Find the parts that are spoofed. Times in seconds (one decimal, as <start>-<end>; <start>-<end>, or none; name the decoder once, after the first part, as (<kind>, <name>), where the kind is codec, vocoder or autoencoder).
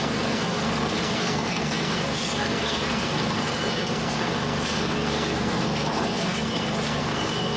0.0-7.6 (codec, SNAC)